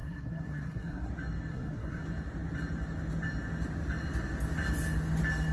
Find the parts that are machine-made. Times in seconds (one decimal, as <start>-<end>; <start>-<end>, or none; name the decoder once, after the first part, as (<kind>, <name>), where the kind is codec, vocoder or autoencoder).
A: 0.0-1.1 (codec, SNAC); 1.5-2.0